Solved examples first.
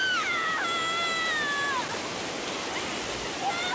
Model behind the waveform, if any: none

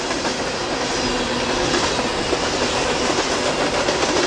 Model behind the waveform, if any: none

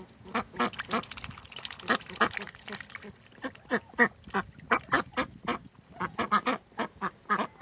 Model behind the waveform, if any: none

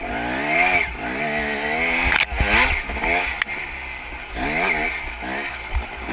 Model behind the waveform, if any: none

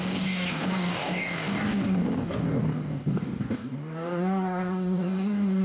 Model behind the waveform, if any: codec, DAC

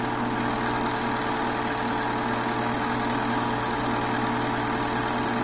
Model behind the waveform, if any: none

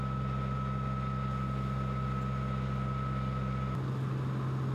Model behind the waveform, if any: none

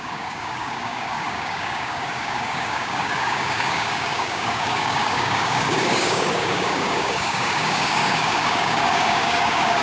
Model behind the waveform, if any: codec, DAC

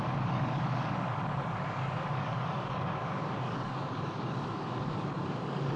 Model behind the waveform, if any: codec, DAC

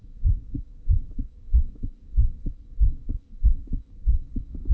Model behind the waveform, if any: codec, DAC